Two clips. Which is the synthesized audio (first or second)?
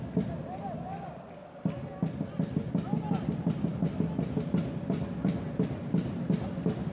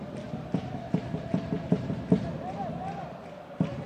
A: second